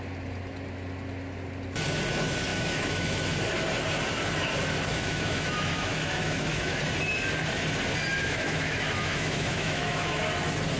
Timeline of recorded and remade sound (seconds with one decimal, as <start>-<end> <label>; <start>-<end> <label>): 0.0-2.5 recorded; 2.5-3.4 remade; 3.4-4.9 recorded; 4.9-6.8 remade; 6.8-8.1 recorded; 8.1-10.2 remade; 10.2-10.8 recorded